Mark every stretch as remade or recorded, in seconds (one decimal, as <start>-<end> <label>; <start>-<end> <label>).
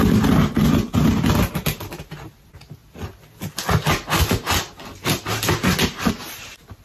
0.0-6.8 recorded